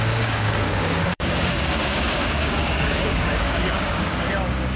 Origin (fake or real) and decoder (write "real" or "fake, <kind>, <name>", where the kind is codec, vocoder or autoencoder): fake, codec, DAC